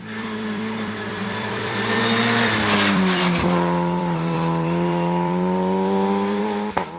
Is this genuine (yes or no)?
no